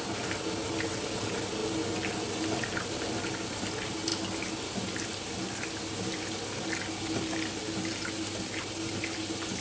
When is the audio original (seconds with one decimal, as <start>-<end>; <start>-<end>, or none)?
0.0-9.6